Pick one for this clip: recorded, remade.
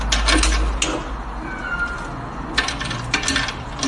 recorded